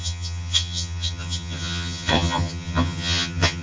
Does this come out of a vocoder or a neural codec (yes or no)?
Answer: yes